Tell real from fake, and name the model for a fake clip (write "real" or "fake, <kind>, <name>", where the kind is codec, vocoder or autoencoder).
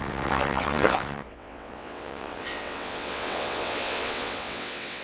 fake, vocoder, WaveNeXt